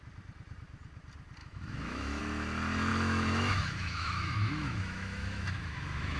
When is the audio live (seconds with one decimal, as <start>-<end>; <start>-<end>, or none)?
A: 0.0-1.4; 2.2-2.9